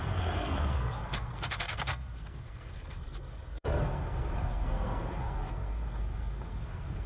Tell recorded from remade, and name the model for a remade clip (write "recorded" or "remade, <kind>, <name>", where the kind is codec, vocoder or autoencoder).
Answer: remade, codec, SNAC